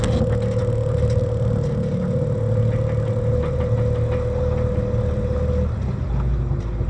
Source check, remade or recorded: recorded